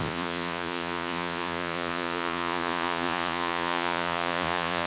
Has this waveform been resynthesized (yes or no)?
yes